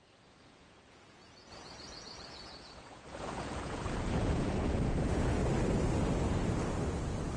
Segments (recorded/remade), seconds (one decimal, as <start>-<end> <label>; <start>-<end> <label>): 0.0-5.4 remade; 5.4-7.4 recorded